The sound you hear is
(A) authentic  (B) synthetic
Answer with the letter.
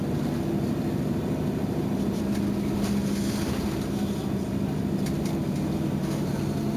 A